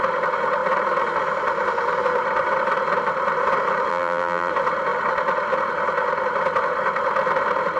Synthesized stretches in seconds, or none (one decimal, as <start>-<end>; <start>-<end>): 3.9-4.5